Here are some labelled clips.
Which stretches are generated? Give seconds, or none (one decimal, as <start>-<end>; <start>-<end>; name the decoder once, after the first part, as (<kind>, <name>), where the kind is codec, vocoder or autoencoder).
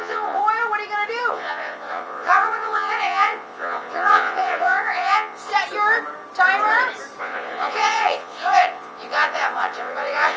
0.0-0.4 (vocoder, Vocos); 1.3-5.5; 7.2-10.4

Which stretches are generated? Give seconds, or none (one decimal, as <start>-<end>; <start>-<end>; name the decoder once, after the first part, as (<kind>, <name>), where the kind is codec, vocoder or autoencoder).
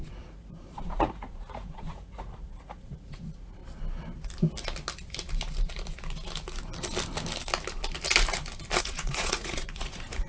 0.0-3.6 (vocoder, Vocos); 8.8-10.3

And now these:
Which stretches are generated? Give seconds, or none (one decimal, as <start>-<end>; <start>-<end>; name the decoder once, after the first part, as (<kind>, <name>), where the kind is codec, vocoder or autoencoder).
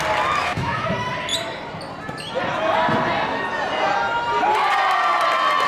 0.4-0.9 (autoencoder, DAC-VAE)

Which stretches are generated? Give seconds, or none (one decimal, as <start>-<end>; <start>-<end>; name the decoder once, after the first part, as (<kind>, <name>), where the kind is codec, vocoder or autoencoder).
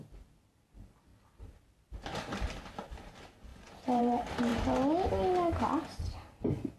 1.1-2.6 (vocoder, BigVGAN v2); 3.5-4.0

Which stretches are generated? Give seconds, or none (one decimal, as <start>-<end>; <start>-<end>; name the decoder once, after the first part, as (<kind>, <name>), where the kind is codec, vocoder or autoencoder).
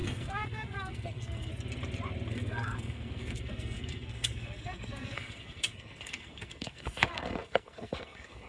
0.0-1.5 (codec, SNAC); 2.3-8.5